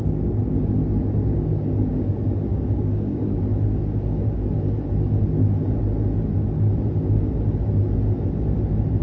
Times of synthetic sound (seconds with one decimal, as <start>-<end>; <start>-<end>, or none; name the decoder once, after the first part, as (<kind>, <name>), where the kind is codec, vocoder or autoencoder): 1.3-2.1 (codec, DAC); 2.5-3.4